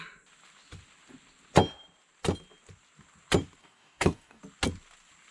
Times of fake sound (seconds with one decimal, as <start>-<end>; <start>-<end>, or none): 3.6-4.4